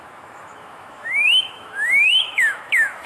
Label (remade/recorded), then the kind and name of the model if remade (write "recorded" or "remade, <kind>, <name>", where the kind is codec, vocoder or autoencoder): remade, autoencoder, DAC-VAE